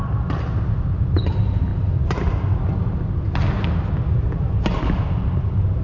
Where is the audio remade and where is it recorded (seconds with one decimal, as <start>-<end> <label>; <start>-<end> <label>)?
0.0-5.8 recorded